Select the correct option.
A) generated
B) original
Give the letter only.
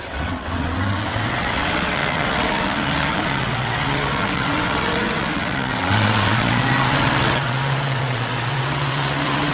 A